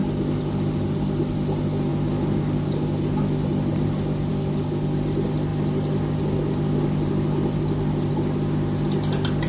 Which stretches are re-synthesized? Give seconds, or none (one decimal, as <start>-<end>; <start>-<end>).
none